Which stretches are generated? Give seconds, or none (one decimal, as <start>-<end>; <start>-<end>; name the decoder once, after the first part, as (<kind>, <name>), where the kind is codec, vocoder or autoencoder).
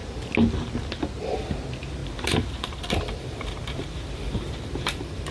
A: 2.0-5.3 (vocoder, BigVGAN v2)